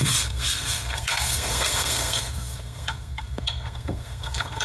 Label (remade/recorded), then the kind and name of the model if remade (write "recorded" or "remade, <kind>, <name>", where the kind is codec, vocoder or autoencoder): remade, codec, SNAC